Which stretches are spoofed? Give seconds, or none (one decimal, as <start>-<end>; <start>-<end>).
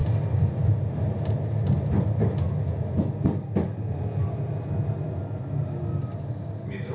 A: none